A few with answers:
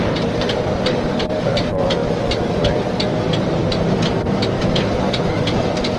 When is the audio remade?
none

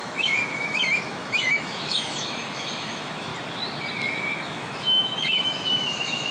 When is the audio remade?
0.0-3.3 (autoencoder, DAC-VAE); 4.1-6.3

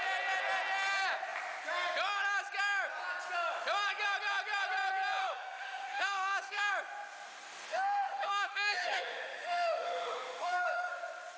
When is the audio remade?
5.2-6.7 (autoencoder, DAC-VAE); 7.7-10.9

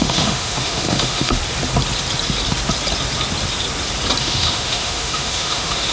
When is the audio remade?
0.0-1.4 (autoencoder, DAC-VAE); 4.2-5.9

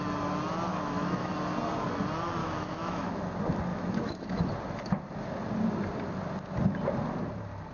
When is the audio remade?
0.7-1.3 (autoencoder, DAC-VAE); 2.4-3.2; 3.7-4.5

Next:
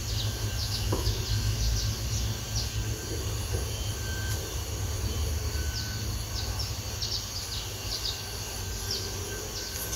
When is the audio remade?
0.6-1.2 (autoencoder, DAC-VAE)